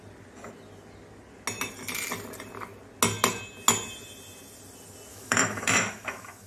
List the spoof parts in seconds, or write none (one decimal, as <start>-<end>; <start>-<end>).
5.1-6.5

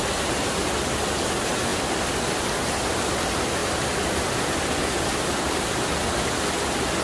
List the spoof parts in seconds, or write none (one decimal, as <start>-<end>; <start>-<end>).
none

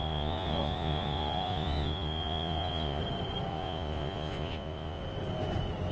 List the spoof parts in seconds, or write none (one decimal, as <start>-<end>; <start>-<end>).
0.0-3.0; 3.5-5.0

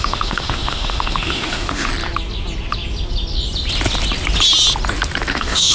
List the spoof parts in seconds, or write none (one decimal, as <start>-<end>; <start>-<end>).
0.0-1.9; 5.3-5.7

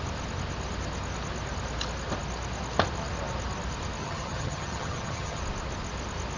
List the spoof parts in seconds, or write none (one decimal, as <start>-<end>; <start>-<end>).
4.0-5.4